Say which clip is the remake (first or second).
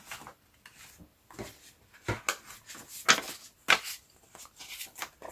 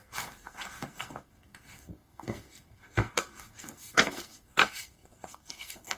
second